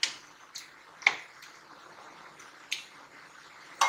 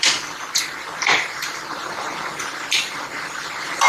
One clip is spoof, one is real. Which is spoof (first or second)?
second